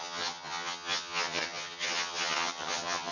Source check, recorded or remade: remade